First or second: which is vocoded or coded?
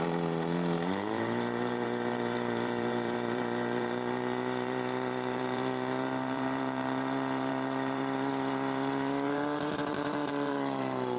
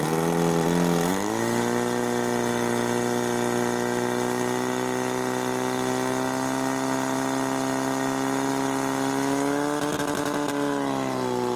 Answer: first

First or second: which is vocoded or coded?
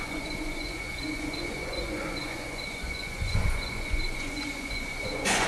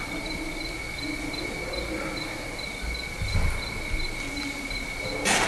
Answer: first